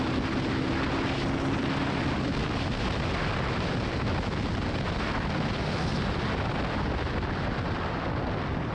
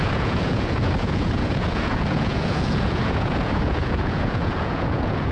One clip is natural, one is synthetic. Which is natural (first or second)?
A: first